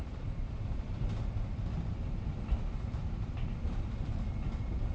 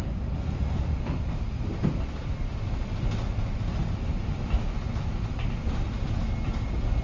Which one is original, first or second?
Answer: second